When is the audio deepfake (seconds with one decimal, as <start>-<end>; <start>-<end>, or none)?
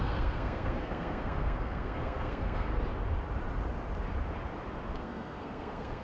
0.0-2.7; 4.9-6.0